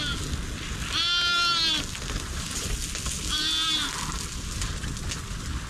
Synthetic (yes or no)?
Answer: no